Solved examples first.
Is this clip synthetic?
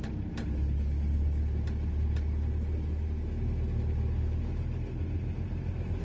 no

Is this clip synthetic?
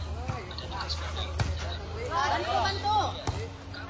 no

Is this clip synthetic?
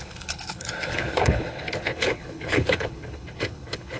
yes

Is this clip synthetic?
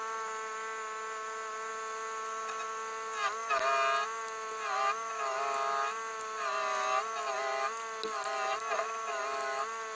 no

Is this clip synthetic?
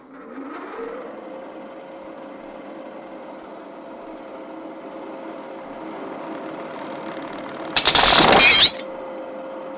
no